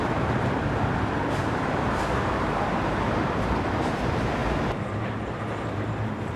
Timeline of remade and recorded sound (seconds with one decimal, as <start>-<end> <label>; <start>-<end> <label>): 0.0-6.4 remade

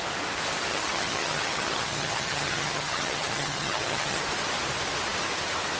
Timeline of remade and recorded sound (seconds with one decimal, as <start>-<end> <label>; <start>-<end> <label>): 0.0-0.7 recorded; 0.7-4.2 remade; 4.2-5.8 recorded